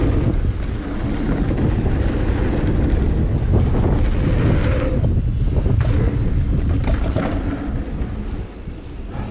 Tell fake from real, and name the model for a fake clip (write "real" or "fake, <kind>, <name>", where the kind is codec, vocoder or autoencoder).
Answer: real